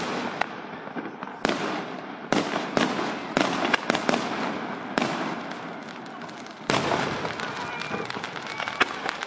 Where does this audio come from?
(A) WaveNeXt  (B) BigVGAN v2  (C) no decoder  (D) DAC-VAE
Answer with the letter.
C